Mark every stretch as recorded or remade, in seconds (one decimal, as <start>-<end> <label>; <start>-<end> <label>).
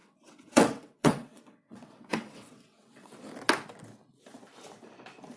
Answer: 0.0-3.2 remade; 3.2-5.4 recorded